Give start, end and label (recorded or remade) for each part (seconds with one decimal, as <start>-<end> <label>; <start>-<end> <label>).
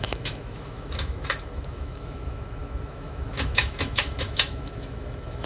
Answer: 0.0-5.5 remade